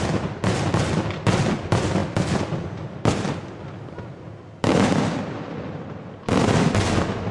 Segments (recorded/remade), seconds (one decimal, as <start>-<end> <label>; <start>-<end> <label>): 0.0-7.3 recorded